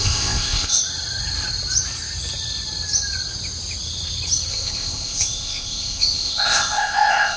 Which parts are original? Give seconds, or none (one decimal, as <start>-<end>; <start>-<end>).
0.8-4.5